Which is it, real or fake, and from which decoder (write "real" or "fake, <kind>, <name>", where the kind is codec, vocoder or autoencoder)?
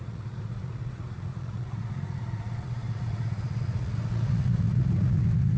fake, vocoder, Vocos